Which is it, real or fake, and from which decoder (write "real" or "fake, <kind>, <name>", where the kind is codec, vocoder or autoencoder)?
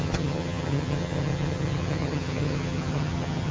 fake, vocoder, HiFi-GAN